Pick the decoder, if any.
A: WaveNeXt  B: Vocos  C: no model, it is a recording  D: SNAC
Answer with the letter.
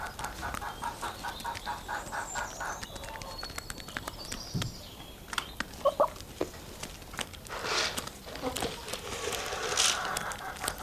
C